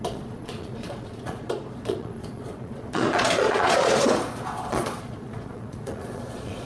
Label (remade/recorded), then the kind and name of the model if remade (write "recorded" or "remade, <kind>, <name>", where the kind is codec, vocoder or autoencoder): remade, vocoder, Vocos